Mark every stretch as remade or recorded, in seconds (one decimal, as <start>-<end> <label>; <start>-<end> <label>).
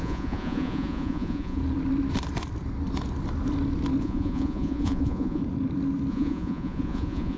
0.0-1.6 remade; 1.6-4.0 recorded; 4.0-5.4 remade; 5.4-6.1 recorded; 6.1-7.4 remade